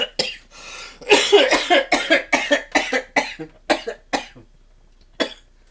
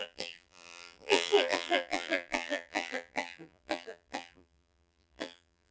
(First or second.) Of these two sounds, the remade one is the second